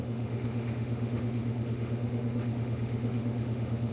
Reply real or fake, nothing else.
fake